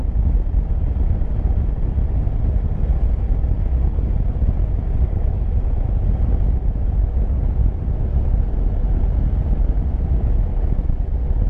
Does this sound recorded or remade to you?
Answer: recorded